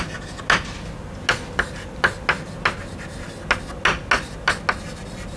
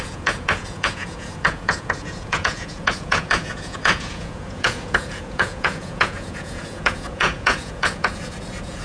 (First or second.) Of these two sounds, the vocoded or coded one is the second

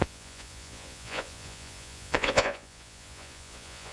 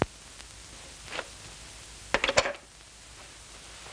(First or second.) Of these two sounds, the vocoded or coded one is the first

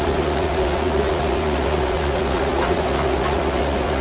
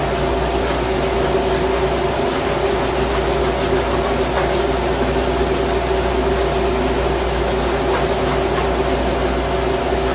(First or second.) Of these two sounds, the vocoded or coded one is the first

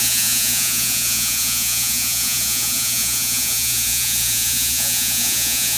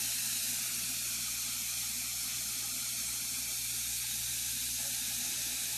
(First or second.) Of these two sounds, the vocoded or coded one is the first